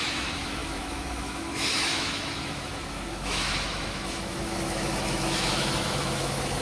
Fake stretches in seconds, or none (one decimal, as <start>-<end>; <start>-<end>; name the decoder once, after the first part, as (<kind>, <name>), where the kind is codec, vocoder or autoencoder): 0.0-6.6 (autoencoder, DAC-VAE)